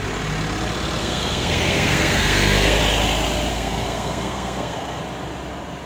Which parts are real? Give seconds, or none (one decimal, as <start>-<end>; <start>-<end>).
0.0-1.0; 2.8-3.5; 5.0-5.9